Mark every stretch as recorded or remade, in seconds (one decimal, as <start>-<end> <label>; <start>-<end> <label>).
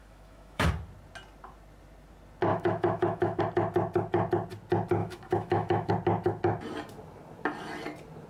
0.0-0.7 remade; 0.7-2.5 recorded; 2.5-3.4 remade; 3.4-5.0 recorded; 5.0-5.9 remade; 5.9-8.3 recorded